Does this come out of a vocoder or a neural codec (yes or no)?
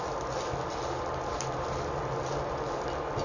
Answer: no